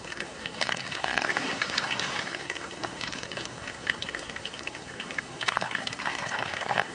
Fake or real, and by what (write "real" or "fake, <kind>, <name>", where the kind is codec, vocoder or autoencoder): fake, codec, SNAC